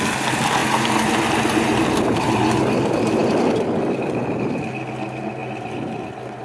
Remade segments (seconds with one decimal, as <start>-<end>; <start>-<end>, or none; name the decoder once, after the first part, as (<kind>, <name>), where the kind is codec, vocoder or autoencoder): none